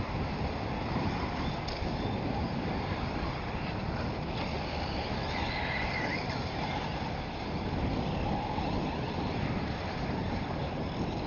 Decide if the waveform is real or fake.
real